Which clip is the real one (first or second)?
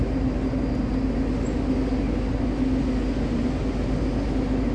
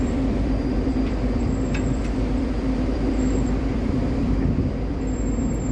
first